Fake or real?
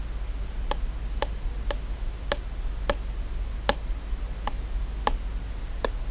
real